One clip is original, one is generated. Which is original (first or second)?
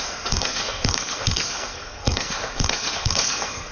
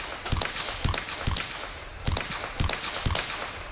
second